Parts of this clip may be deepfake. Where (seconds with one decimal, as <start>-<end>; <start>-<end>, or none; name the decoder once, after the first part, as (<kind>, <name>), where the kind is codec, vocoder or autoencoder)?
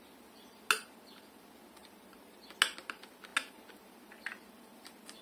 1.8-2.5 (vocoder, BigVGAN v2)